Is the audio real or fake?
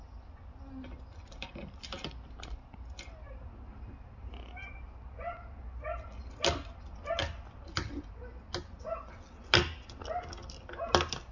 real